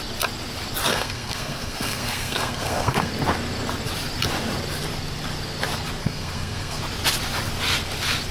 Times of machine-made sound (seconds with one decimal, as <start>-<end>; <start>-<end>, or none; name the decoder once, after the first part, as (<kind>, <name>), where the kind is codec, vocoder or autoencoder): 0.9-3.1 (codec, SNAC); 6.0-6.8

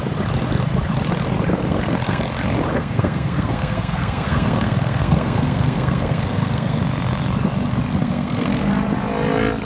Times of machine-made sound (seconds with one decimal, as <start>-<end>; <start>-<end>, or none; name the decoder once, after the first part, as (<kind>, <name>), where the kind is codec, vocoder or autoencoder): 1.5-2.2 (codec, SNAC); 2.7-6.8; 8.0-8.7

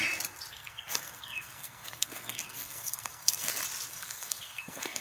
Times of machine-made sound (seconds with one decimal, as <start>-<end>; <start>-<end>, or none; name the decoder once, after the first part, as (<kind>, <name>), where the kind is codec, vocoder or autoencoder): 0.5-3.5 (codec, SNAC); 3.9-5.0

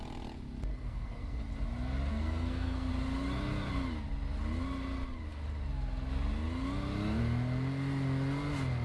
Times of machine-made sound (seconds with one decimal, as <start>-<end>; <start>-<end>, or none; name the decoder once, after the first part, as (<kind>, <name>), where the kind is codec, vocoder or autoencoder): 0.7-1.4 (codec, SNAC); 2.1-2.9

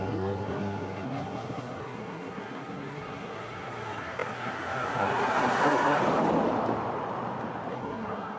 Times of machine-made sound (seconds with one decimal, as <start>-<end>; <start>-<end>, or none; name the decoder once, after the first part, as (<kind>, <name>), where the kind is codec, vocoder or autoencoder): 0.0-6.0 (codec, SNAC); 7.7-8.4

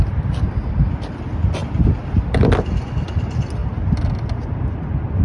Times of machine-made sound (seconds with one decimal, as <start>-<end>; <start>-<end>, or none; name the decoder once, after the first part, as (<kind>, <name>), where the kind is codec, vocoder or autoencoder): none

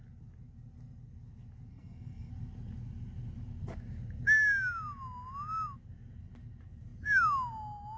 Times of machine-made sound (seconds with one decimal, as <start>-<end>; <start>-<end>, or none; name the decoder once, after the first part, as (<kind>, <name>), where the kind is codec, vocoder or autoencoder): 1.7-2.3 (codec, SNAC)

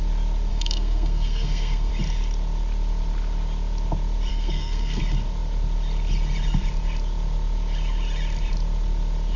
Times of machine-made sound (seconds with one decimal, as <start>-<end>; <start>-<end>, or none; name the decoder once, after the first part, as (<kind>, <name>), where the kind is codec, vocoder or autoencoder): 0.5-1.9 (codec, SNAC); 4.3-5.0